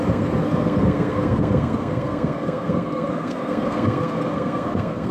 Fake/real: fake